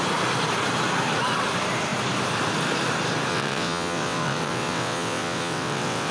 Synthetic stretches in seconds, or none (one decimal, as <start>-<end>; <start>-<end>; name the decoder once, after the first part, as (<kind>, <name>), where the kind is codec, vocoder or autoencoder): 3.3-6.1 (vocoder, WaveNeXt)